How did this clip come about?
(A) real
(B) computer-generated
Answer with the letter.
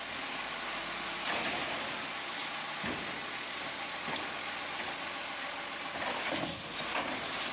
A